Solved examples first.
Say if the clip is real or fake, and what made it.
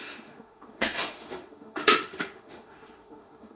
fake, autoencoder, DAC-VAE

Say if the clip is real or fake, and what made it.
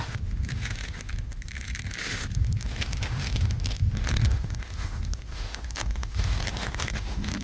fake, autoencoder, DAC-VAE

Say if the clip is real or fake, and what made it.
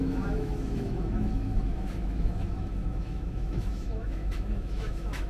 fake, autoencoder, DAC-VAE